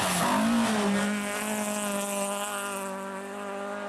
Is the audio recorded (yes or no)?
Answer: yes